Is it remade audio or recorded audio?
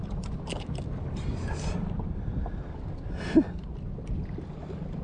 recorded